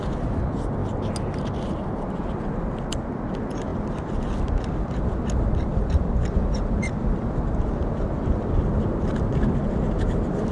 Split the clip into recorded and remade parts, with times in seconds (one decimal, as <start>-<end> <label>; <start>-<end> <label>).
0.0-3.7 recorded; 3.7-8.0 remade; 8.0-10.5 recorded